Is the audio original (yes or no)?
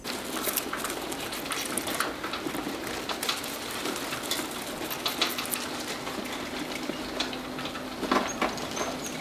yes